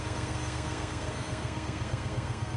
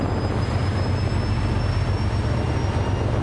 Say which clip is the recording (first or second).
second